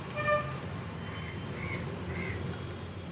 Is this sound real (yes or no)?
yes